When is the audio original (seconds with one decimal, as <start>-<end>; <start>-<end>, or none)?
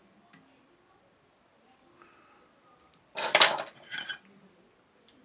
0.0-1.5; 4.6-5.2